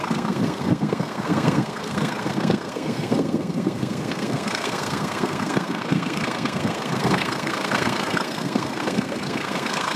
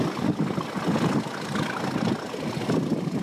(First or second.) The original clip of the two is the second